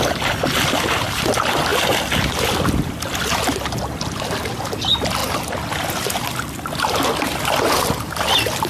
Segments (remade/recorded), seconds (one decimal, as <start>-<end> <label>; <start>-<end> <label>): 0.0-8.7 recorded